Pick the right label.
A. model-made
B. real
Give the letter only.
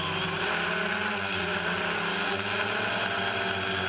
B